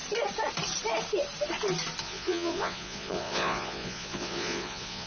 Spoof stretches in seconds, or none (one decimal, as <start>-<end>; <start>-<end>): 2.0-5.1